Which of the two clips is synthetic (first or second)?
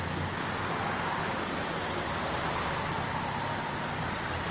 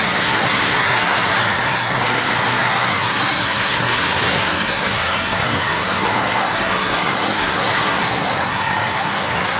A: second